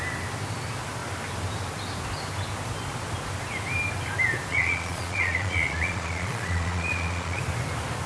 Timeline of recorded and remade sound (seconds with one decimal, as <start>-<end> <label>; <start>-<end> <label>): 0.0-4.5 recorded; 4.5-7.4 remade; 7.4-8.1 recorded